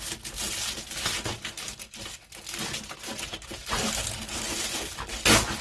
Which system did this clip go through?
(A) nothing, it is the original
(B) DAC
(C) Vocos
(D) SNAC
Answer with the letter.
A